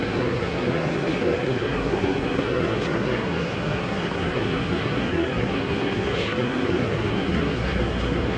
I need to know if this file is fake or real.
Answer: fake